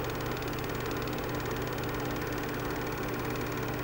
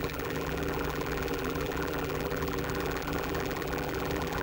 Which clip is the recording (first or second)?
first